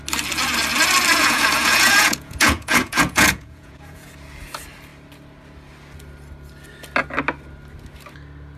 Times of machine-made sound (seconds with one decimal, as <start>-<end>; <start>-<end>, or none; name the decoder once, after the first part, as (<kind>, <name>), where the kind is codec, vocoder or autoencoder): 1.1-4.1 (vocoder, Vocos)